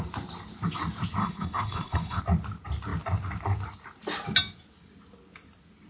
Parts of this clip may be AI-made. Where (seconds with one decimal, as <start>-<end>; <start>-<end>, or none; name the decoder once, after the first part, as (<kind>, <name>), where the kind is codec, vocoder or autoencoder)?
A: 1.2-2.2 (codec, HILCodec)